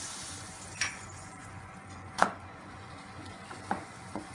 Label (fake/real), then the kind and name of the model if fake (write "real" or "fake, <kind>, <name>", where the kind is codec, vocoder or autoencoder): fake, vocoder, Vocos